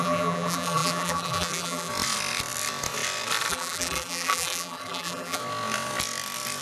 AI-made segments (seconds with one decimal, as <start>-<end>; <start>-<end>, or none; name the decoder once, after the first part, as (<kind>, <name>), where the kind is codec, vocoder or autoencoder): 0.0-1.9 (vocoder, BigVGAN v2); 3.5-5.4